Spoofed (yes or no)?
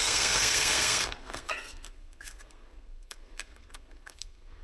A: yes